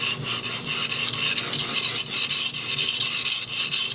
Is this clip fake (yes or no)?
no